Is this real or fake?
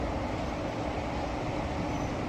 real